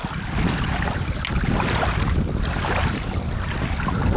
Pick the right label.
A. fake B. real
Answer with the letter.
B